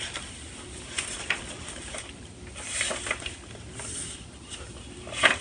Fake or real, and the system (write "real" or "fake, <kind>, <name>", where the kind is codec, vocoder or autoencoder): fake, vocoder, BigVGAN v2